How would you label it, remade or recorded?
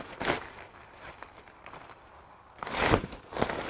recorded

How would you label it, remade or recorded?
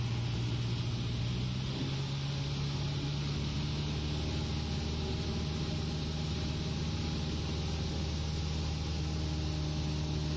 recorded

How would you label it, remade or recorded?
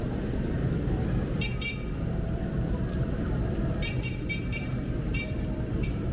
remade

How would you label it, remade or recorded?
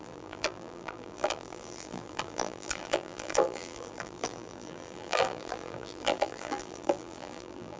remade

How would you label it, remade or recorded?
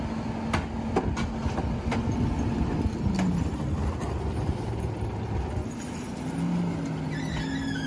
recorded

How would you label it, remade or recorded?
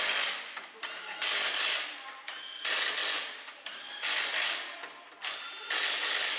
recorded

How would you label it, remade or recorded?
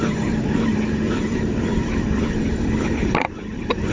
remade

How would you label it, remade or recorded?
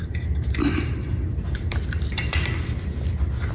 recorded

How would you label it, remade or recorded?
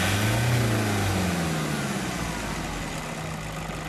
recorded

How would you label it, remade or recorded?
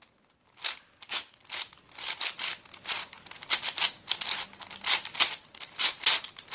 recorded